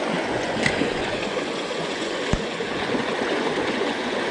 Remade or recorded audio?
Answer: remade